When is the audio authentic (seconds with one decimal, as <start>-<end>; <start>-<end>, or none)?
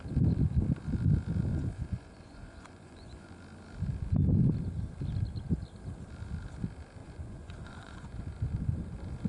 0.0-1.5; 3.3-7.0; 8.3-9.3